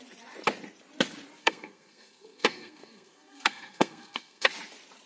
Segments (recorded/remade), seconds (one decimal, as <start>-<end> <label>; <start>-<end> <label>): 0.0-1.4 recorded; 1.4-4.5 remade; 4.5-5.1 recorded